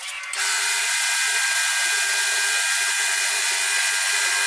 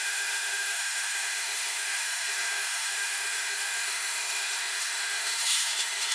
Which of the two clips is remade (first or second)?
second